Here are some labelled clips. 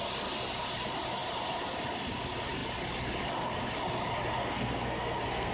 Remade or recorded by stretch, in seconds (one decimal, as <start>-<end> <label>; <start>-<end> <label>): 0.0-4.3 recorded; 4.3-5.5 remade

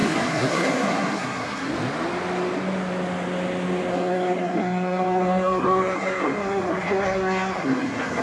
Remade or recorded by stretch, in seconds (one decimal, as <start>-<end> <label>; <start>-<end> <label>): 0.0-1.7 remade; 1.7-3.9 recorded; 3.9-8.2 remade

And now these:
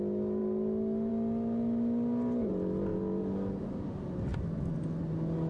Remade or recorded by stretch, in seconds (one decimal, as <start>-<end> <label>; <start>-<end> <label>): 0.0-5.5 recorded